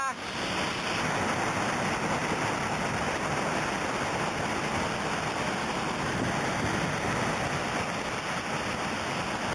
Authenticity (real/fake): real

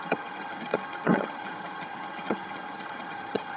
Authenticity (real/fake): fake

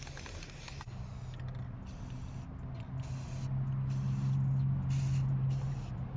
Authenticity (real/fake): real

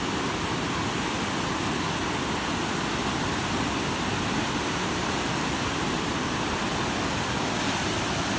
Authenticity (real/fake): real